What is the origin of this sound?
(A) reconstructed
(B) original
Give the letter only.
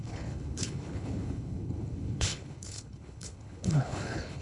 A